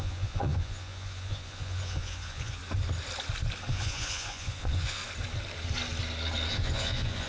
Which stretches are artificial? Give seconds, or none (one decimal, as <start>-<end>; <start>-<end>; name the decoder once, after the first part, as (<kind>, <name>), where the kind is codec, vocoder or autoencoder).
0.0-2.6 (vocoder, Vocos); 3.7-5.0; 6.5-7.3

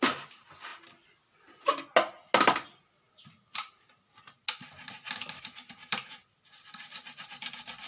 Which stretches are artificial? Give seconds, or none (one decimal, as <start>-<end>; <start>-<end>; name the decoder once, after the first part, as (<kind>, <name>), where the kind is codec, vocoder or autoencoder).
none

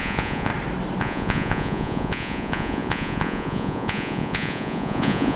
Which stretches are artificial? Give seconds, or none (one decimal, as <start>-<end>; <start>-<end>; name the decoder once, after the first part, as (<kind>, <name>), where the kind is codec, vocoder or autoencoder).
0.0-0.5 (vocoder, Vocos); 1.0-5.4

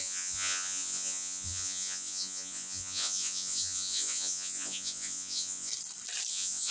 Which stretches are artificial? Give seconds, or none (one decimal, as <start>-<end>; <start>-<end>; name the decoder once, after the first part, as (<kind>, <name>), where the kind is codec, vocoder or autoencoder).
0.0-5.7 (vocoder, Vocos); 6.3-6.7